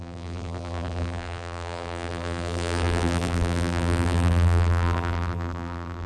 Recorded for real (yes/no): no